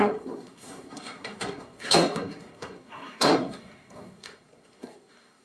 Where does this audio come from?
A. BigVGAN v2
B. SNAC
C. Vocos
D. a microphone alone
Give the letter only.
B